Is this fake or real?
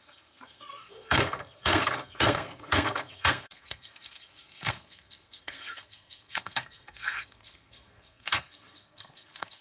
fake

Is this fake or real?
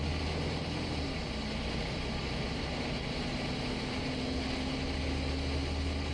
real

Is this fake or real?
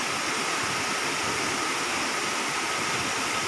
real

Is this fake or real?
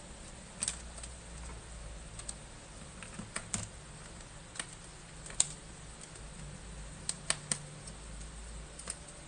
real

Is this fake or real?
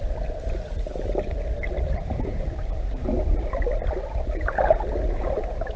real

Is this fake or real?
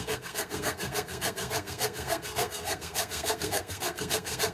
fake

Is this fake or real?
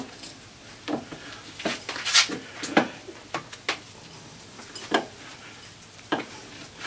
real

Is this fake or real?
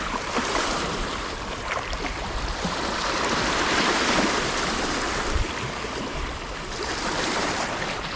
fake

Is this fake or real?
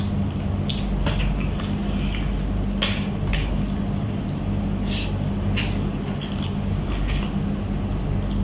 real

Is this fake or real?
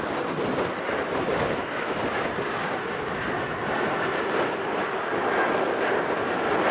real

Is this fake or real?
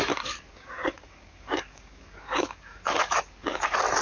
fake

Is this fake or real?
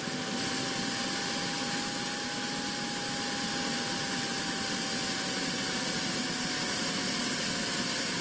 real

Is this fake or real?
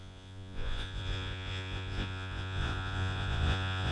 fake